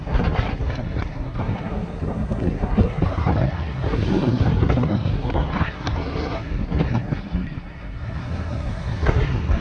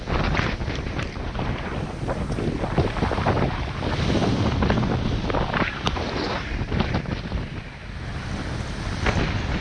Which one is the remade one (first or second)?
first